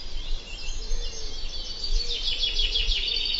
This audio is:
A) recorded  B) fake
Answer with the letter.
A